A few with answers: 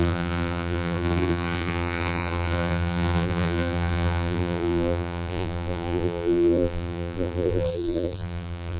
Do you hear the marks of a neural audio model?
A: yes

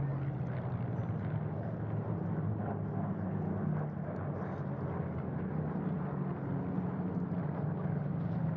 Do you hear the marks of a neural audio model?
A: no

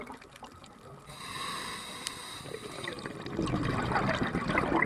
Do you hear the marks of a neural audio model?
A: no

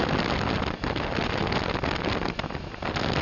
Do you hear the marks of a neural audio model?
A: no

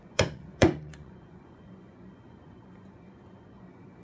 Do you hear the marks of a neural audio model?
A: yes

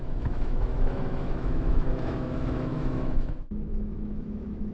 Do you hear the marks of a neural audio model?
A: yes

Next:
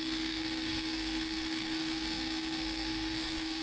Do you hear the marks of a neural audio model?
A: yes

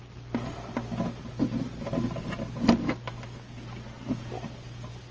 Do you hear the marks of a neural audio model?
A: no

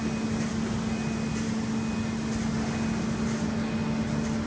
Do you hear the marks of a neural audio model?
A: no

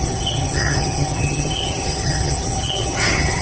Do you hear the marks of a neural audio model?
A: yes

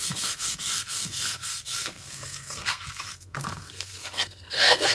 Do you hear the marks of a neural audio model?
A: yes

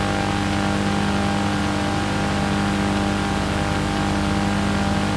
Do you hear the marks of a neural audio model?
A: no